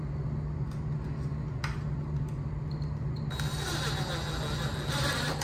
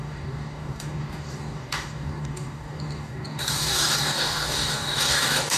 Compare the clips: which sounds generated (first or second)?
second